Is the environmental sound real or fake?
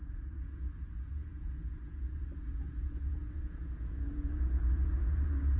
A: fake